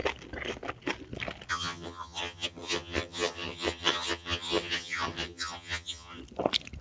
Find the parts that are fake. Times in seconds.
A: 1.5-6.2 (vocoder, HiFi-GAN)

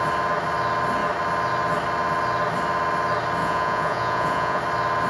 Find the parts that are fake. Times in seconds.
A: 3.4-4.6 (vocoder, Vocos)

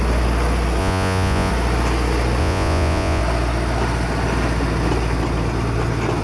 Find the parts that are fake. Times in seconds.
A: 0.8-1.5 (vocoder, Vocos); 2.4-3.2

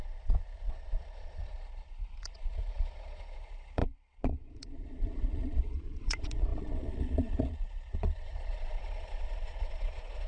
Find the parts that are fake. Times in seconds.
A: 0.0-10.3 (vocoder, Vocos)

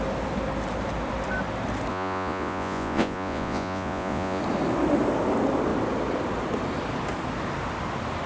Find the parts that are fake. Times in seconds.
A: 1.9-4.4 (vocoder, Vocos)

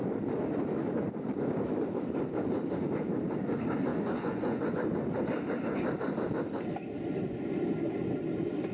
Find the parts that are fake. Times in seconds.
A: 3.9-4.7 (vocoder, Vocos)

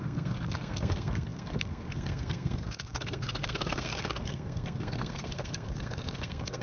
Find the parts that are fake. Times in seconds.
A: 0.0-6.6 (codec, SNAC)

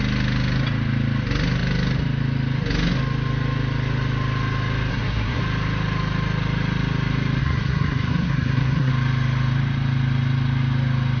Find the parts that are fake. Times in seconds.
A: 4.9-5.4 (codec, SNAC); 7.4-8.9